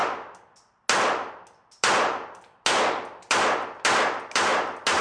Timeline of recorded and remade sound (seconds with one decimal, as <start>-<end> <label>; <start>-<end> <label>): 0.0-5.0 recorded